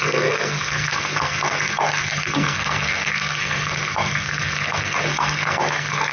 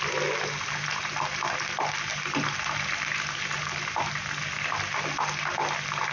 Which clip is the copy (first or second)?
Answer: first